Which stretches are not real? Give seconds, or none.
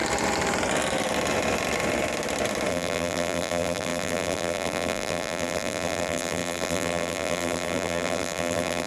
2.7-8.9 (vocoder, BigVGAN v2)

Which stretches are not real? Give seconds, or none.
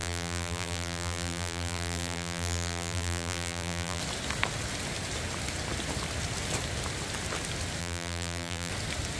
0.0-4.0 (vocoder, BigVGAN v2); 7.8-8.7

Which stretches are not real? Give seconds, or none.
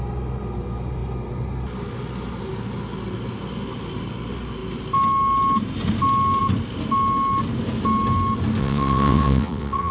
8.6-9.9 (vocoder, WaveNeXt)